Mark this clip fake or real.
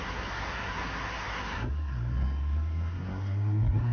fake